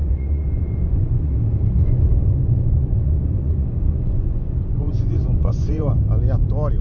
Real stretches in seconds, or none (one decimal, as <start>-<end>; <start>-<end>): 1.3-1.8; 5.9-6.8